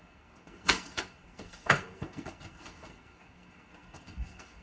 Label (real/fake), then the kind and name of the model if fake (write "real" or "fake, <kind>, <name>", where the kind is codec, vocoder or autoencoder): fake, codec, SNAC